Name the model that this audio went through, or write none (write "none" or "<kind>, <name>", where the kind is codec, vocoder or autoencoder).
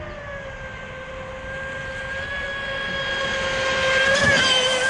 none